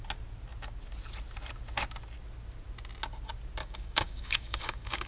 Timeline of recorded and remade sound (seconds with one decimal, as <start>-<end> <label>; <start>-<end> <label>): 0.0-3.6 recorded; 3.6-5.1 remade